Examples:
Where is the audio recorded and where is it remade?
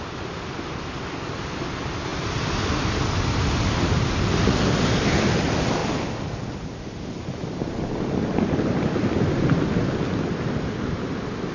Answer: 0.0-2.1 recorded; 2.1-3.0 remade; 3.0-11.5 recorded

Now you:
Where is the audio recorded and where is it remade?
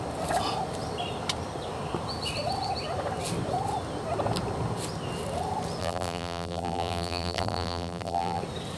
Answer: 0.0-5.8 recorded; 5.8-8.4 remade; 8.4-8.8 recorded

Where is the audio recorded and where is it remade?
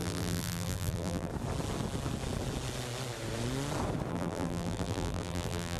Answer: 0.0-1.3 remade; 1.3-4.1 recorded; 4.1-5.8 remade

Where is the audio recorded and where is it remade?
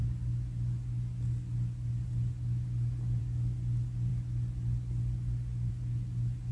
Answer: 0.0-6.5 recorded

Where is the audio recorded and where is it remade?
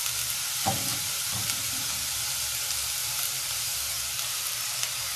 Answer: 0.0-0.9 recorded; 0.9-1.9 remade; 1.9-3.0 recorded; 3.0-3.7 remade; 3.7-5.2 recorded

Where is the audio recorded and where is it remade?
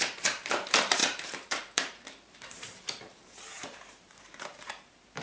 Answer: 0.0-5.2 remade